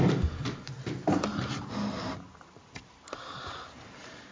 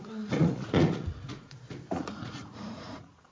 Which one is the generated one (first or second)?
second